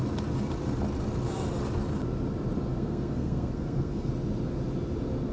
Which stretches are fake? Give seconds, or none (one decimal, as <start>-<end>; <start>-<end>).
2.7-4.1